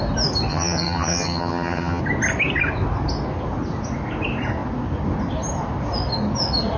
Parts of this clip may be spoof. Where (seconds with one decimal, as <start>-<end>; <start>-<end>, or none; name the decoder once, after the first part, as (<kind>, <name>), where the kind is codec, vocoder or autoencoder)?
0.5-2.0 (vocoder, HiFi-GAN)